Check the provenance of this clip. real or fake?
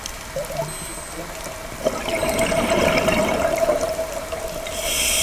real